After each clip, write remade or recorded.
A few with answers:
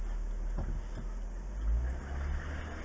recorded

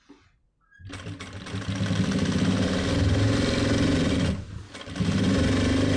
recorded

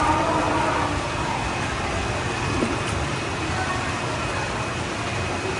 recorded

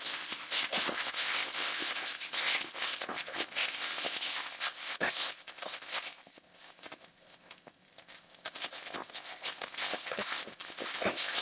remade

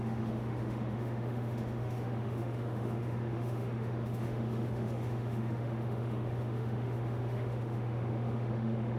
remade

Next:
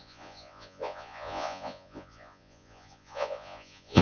remade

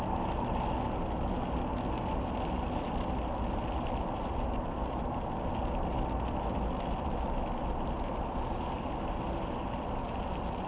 recorded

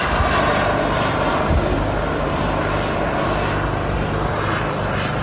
recorded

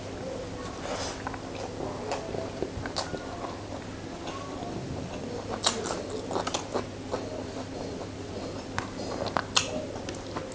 recorded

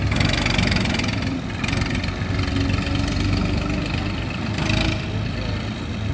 recorded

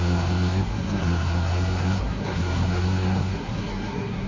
remade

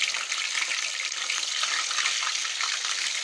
recorded